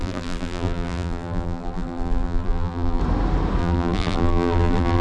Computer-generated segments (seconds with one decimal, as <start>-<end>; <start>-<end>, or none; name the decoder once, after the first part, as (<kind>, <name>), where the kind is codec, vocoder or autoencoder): 0.0-3.0 (vocoder, BigVGAN v2); 3.6-5.0